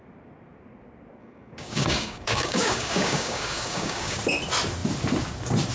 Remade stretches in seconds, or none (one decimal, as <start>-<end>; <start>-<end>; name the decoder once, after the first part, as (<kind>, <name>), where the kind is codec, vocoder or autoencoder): 1.2-4.2 (codec, DAC)